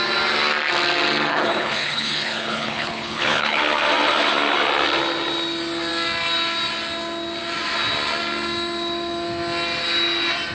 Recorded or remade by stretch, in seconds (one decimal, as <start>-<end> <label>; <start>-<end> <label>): 0.0-1.3 recorded; 1.3-3.6 remade; 3.6-10.5 recorded